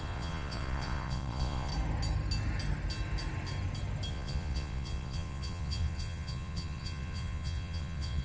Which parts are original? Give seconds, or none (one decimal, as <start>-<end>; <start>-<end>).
1.7-4.1